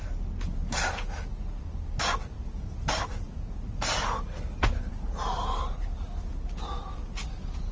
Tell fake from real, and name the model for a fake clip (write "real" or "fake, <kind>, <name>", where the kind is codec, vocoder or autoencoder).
real